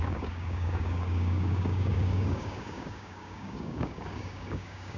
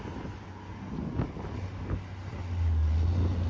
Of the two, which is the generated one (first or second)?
first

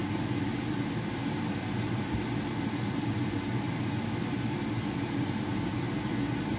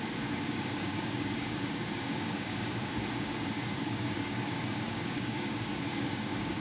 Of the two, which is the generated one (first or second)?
second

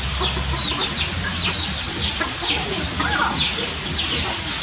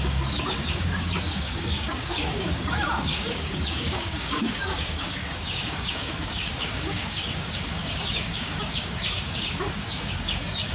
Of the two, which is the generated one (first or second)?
second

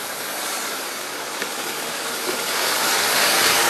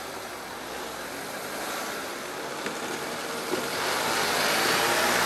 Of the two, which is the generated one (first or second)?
first